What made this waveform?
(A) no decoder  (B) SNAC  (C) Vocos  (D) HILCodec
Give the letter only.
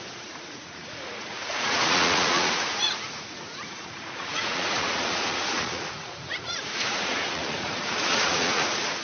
C